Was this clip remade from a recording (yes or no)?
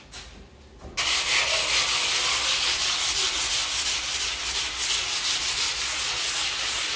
no